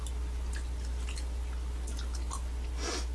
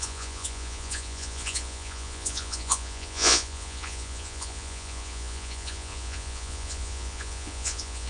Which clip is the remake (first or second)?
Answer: second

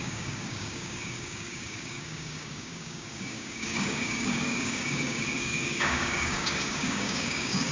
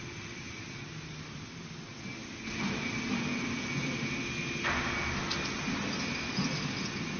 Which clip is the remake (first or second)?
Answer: first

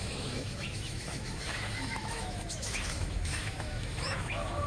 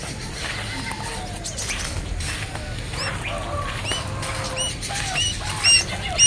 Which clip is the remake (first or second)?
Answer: first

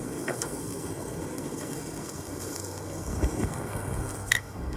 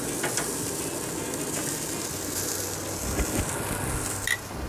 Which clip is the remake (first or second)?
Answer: first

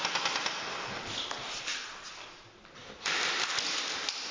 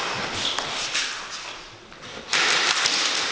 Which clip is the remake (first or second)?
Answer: second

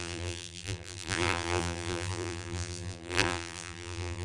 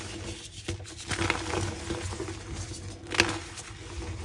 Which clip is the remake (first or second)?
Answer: first